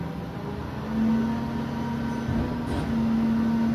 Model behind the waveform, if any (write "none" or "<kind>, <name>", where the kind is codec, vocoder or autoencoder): none